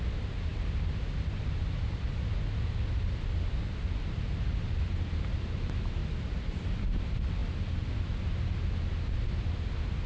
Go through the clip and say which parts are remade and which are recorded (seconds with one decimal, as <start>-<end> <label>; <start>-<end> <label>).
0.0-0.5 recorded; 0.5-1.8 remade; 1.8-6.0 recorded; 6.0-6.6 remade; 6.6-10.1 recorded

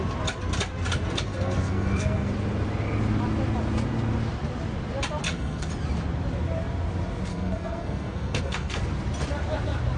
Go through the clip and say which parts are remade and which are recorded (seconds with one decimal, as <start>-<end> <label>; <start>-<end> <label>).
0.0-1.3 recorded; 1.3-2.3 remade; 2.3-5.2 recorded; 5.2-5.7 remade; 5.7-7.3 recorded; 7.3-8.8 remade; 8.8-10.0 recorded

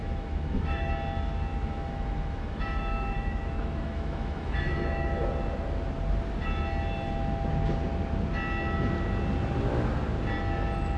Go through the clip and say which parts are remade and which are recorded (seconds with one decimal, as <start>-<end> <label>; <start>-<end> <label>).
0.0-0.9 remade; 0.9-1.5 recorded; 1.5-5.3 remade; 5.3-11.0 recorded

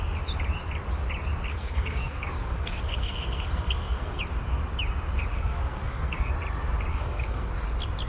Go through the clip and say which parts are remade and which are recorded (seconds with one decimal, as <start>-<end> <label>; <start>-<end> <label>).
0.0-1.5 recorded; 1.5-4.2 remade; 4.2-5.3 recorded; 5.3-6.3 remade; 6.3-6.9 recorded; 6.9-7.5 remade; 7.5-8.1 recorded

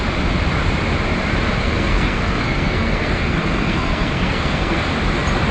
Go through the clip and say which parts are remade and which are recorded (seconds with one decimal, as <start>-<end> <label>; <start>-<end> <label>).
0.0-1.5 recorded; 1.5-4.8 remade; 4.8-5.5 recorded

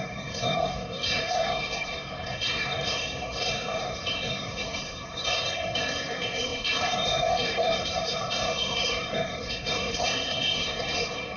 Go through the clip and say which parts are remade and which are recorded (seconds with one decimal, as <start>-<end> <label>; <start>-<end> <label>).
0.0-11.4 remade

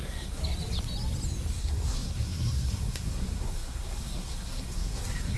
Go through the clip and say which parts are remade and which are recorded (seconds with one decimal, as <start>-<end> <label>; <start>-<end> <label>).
0.0-0.4 remade; 0.4-1.5 recorded; 1.5-5.4 remade